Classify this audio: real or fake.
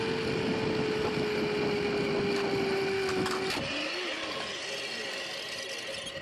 real